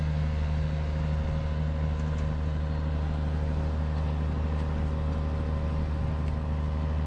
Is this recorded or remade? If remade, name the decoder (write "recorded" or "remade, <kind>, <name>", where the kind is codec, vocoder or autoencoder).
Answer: recorded